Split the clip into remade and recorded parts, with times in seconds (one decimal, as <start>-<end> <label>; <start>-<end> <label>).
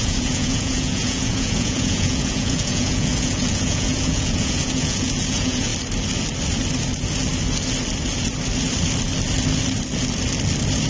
0.0-5.7 remade; 5.7-10.9 recorded